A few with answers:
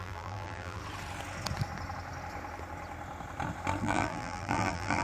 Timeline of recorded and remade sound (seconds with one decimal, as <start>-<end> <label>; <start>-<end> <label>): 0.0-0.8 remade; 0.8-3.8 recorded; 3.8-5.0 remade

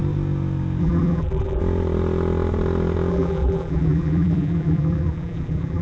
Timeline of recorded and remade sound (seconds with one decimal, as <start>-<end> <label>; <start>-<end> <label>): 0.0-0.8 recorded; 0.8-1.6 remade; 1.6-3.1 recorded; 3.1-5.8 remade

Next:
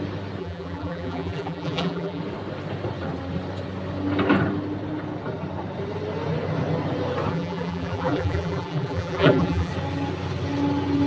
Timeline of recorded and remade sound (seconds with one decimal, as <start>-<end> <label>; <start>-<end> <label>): 0.0-0.4 recorded; 0.4-2.2 remade; 2.2-7.3 recorded; 7.3-9.7 remade; 9.7-11.1 recorded

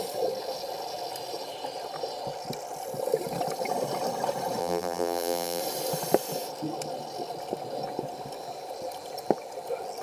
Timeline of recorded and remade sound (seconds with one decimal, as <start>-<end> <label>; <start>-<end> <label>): 0.0-4.6 recorded; 4.6-5.6 remade; 5.6-10.0 recorded

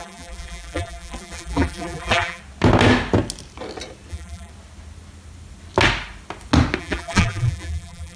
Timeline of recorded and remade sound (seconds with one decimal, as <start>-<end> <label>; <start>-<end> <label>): 0.0-2.4 remade; 2.4-4.1 recorded; 4.1-4.5 remade; 4.5-6.8 recorded; 6.8-8.2 remade

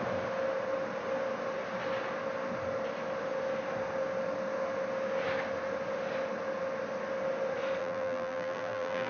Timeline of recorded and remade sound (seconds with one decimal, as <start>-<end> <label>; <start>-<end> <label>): 0.0-7.8 recorded; 7.8-9.1 remade

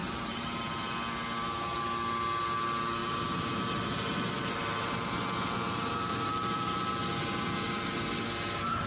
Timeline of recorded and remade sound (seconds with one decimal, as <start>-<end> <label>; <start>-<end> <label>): 0.0-0.6 remade; 0.6-3.0 recorded; 3.0-6.9 remade; 6.9-8.9 recorded